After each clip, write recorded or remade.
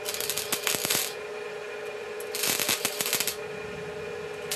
recorded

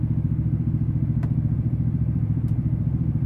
remade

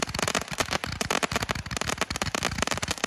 remade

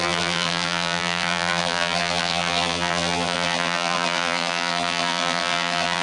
remade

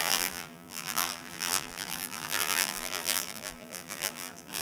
remade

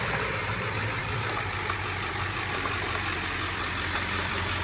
remade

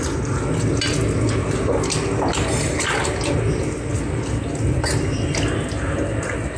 recorded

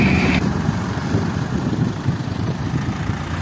remade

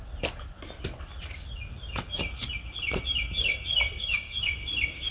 recorded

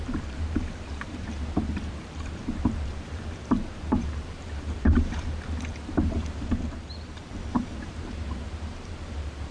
remade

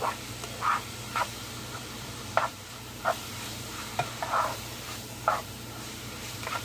remade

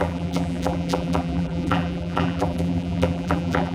remade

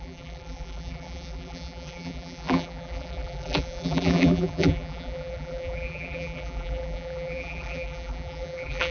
remade